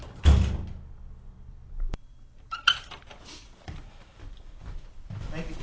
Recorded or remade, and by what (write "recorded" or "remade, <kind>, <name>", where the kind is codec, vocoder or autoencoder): remade, vocoder, BigVGAN v2